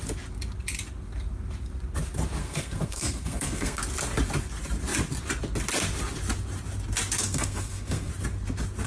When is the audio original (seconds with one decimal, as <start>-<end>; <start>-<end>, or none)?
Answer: 0.0-2.4; 3.8-7.2; 8.1-8.9